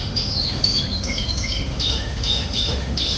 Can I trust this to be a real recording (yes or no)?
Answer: no